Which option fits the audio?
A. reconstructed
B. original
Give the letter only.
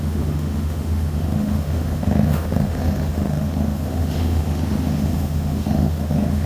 A